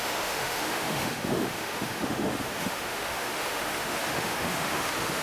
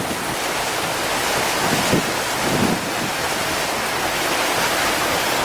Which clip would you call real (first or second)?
second